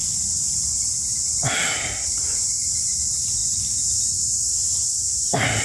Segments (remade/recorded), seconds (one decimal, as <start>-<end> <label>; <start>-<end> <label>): 0.0-5.6 recorded